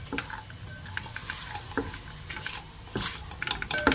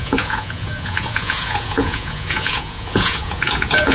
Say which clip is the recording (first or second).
first